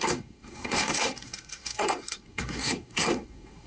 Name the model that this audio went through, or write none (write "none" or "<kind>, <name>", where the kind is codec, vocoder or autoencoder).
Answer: codec, SNAC